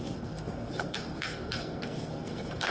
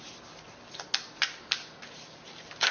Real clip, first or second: second